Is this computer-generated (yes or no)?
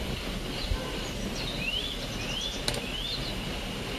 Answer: no